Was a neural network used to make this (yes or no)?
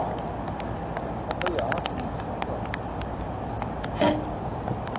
no